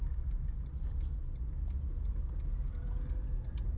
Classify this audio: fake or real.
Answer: real